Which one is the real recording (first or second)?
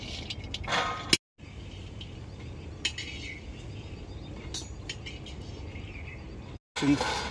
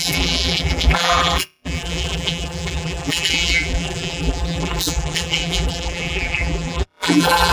first